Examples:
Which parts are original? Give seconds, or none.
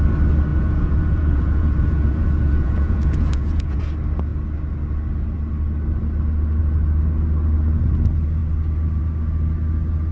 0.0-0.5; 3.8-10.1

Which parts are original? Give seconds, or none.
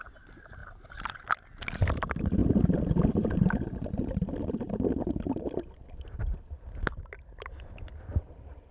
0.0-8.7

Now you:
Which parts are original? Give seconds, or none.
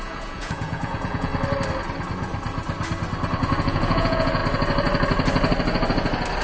1.3-3.6; 4.4-6.4